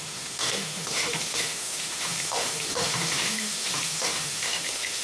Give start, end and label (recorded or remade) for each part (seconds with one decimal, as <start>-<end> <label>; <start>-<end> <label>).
0.0-5.0 remade